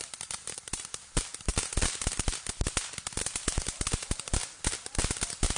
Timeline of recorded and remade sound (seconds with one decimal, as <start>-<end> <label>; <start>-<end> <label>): 0.0-1.5 remade; 1.5-4.9 recorded; 4.9-5.6 remade